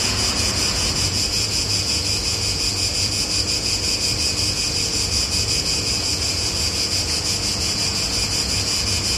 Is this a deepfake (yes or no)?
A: yes